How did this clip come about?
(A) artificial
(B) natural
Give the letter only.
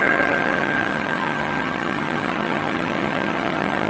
A